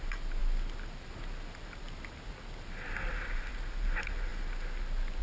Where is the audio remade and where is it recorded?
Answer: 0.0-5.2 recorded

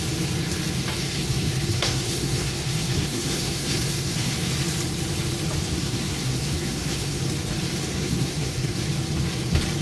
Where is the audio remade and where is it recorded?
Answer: 0.0-1.0 recorded; 1.0-4.3 remade; 4.3-5.7 recorded; 5.7-7.2 remade; 7.2-7.9 recorded; 7.9-8.8 remade; 8.8-9.8 recorded

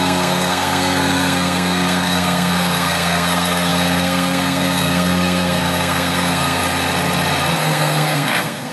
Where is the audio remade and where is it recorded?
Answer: 0.0-6.6 remade; 6.6-7.6 recorded; 7.6-8.7 remade

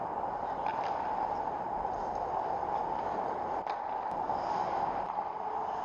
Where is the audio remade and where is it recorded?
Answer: 0.0-5.8 recorded

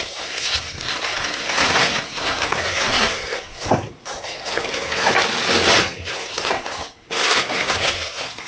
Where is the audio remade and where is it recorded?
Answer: 0.0-5.1 remade; 5.1-5.8 recorded; 5.8-8.5 remade

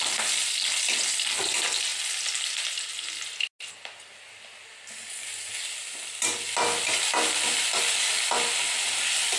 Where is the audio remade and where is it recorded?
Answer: 0.0-9.4 recorded